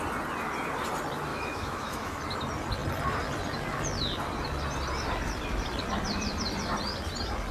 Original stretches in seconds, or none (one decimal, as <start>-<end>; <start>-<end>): 0.0-1.3; 2.2-7.5